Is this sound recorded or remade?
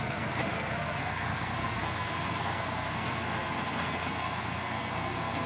remade